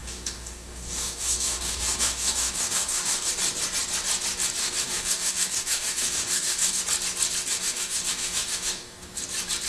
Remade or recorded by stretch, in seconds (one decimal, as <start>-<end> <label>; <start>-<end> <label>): 0.0-3.3 remade; 3.3-4.6 recorded; 4.6-6.8 remade; 6.8-7.5 recorded; 7.5-9.1 remade; 9.1-9.7 recorded